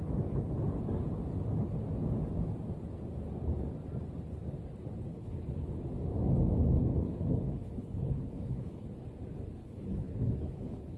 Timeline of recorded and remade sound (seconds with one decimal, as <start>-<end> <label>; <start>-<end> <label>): 0.0-5.1 recorded; 5.1-5.7 remade; 5.7-6.8 recorded; 6.8-8.9 remade; 8.9-9.6 recorded; 9.6-11.0 remade